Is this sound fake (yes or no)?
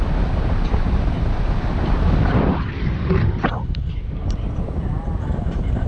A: no